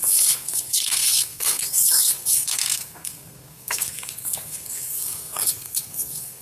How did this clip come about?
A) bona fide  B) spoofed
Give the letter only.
B